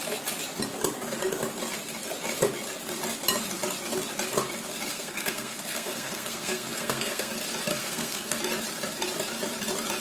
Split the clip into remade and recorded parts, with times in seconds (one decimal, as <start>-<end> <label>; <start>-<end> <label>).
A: 0.0-4.9 recorded; 4.9-7.3 remade; 7.3-7.7 recorded; 7.7-8.4 remade; 8.4-10.0 recorded

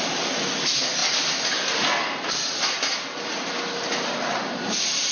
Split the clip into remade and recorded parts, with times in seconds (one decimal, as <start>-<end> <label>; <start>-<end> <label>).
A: 0.0-5.1 recorded

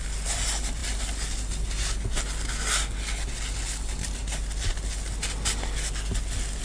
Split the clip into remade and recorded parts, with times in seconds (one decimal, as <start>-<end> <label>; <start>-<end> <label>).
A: 0.0-6.6 recorded